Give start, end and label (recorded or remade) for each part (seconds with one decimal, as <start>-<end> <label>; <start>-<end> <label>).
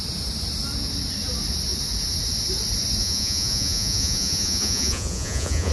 0.0-3.0 recorded; 3.0-5.7 remade